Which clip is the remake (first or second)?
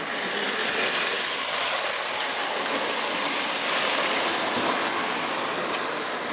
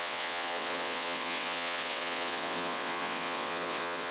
second